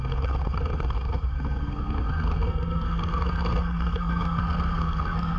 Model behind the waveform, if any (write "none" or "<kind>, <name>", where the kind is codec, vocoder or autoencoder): codec, SNAC